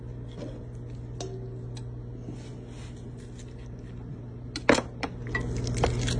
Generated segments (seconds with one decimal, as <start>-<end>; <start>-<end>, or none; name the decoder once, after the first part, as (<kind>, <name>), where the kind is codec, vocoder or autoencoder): none